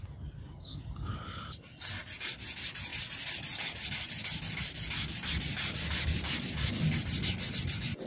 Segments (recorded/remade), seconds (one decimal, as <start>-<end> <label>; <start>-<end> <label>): 0.0-8.1 recorded